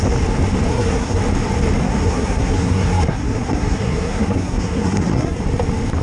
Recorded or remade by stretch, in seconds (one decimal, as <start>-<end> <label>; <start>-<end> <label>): 0.0-0.7 recorded; 0.7-1.2 remade; 1.2-1.8 recorded; 1.8-5.4 remade; 5.4-6.0 recorded